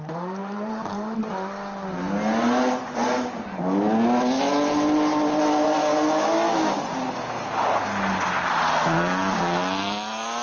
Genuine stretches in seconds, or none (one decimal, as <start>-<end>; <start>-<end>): 0.0-0.4; 1.2-10.4